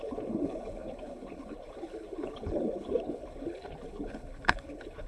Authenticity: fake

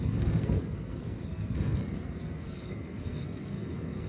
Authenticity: fake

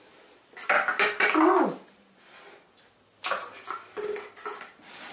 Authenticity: real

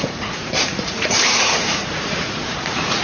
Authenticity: fake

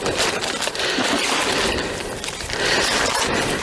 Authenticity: real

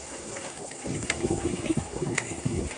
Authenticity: fake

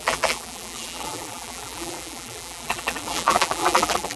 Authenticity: fake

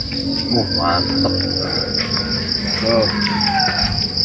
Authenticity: real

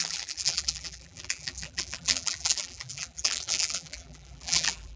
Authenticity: fake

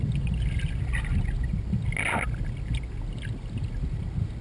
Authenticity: real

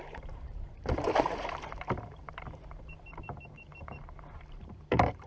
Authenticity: fake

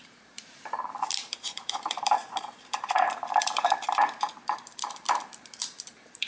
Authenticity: fake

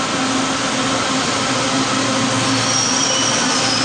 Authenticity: real